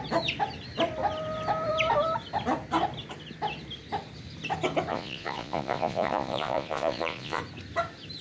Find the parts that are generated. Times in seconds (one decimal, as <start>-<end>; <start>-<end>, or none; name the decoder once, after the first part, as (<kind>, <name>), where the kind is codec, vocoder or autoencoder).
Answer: 4.9-7.4 (vocoder, Vocos)